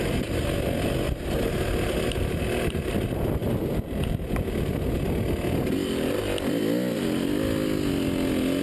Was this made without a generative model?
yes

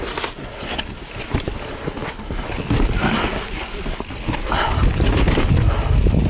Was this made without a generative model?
yes